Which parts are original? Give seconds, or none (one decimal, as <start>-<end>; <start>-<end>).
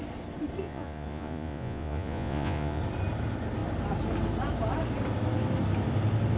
0.0-0.6; 2.8-6.4